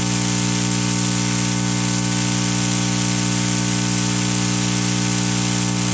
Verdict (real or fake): real